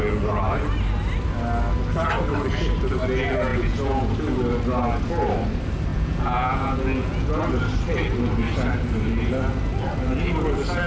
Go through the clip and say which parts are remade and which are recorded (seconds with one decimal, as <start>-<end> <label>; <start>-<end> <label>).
0.0-3.5 recorded; 3.5-4.1 remade; 4.1-5.9 recorded; 5.9-7.4 remade; 7.4-10.9 recorded